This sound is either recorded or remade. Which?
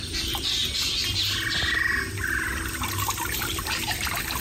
recorded